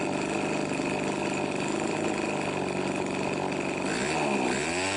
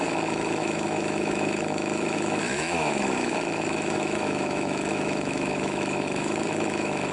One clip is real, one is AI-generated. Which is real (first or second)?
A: first